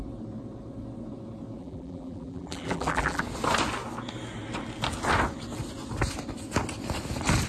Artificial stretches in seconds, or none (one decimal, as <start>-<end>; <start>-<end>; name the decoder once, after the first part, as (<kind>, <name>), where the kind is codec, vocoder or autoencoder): 1.6-3.2 (vocoder, BigVGAN v2)